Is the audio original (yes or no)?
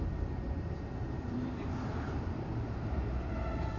no